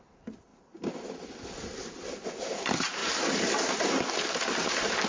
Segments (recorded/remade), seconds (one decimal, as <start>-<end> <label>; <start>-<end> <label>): 0.0-5.1 recorded